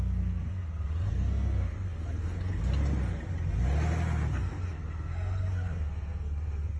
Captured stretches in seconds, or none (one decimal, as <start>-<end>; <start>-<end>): 2.6-4.3